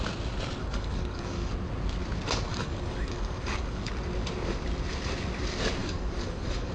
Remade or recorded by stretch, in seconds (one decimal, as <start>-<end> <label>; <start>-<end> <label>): 0.0-0.6 recorded; 0.6-1.5 remade; 1.5-2.5 recorded; 2.5-3.9 remade; 3.9-5.8 recorded; 5.8-6.7 remade